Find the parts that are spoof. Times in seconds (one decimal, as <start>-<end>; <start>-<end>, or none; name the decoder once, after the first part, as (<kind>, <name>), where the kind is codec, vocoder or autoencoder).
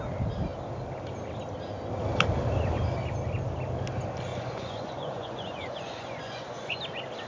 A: 4.3-6.8 (vocoder, Vocos)